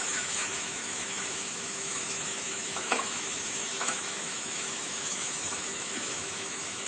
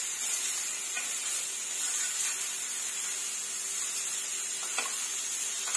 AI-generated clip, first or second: first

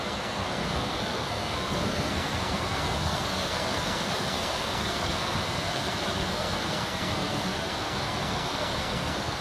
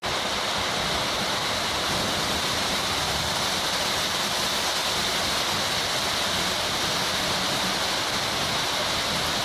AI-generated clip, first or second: first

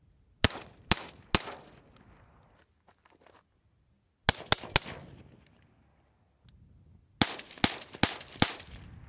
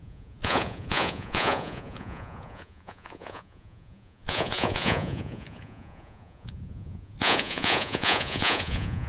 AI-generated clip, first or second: second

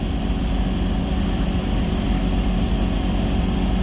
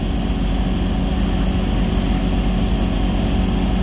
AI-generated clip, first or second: first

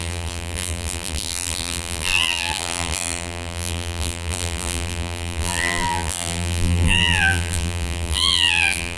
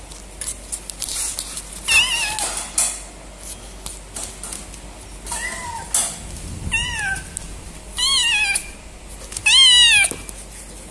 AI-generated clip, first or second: first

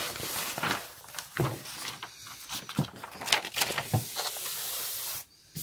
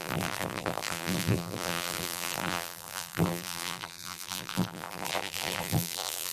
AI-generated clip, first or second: second